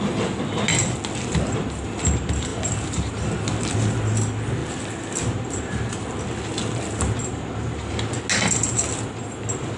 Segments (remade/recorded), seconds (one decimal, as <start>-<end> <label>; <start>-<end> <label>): 0.0-2.5 recorded; 2.5-3.1 remade; 3.1-4.6 recorded; 4.6-6.2 remade; 6.2-7.2 recorded; 7.2-7.9 remade; 7.9-9.8 recorded